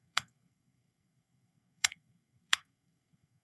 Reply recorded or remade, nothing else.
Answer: remade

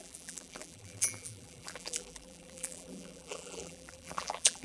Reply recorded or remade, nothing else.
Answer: remade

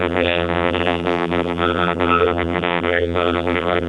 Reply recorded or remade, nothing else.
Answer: remade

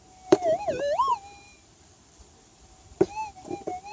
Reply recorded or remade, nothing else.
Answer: remade